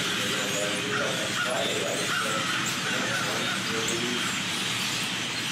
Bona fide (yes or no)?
yes